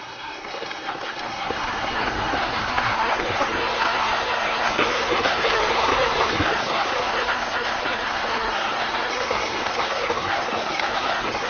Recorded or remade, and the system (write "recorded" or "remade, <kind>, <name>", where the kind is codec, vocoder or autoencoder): remade, codec, SNAC